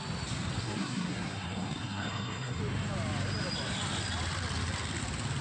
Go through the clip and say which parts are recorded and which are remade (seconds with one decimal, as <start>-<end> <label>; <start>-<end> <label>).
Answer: 0.0-0.6 recorded; 0.6-2.6 remade; 2.6-5.4 recorded